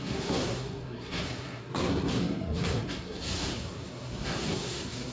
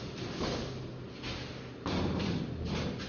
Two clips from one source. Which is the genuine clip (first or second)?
second